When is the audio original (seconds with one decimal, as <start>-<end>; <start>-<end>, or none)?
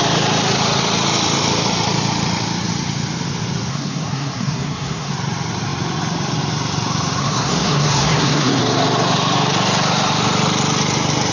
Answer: 0.0-3.7; 5.1-7.2; 8.6-11.3